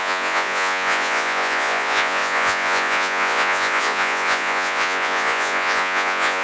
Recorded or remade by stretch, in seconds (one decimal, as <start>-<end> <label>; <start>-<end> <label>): 0.0-6.4 remade